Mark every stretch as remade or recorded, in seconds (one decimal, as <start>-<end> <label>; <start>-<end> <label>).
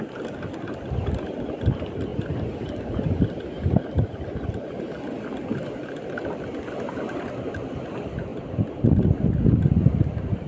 0.0-10.5 recorded